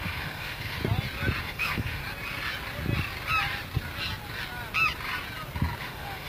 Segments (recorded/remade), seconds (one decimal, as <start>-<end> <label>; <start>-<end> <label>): 0.0-0.8 remade; 0.8-1.4 recorded; 1.4-2.0 remade; 2.0-5.8 recorded; 5.8-6.3 remade